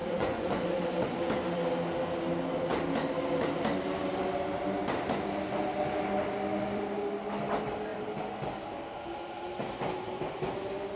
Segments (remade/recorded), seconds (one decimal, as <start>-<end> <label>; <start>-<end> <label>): 0.0-0.8 remade; 0.8-11.0 recorded